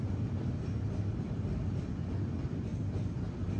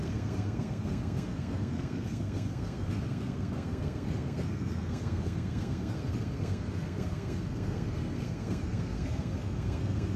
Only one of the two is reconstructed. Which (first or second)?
second